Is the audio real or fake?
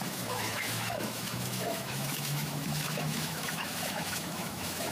fake